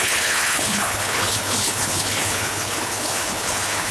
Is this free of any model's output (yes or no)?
no